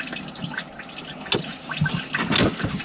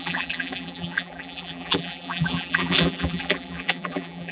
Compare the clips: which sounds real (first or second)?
first